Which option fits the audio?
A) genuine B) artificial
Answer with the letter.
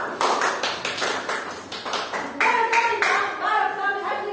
A